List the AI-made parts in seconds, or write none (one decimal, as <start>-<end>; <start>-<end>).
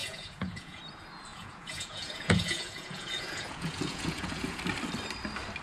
0.0-0.8; 1.3-4.6